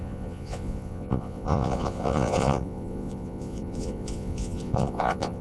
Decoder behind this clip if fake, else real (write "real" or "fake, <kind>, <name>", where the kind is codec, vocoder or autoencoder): fake, vocoder, Vocos